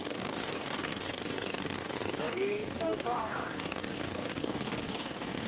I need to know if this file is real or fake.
fake